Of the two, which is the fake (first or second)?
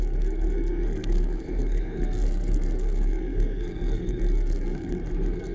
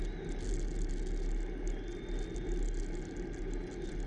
first